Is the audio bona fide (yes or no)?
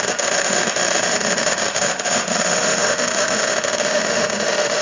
no